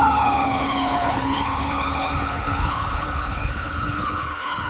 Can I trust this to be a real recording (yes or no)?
no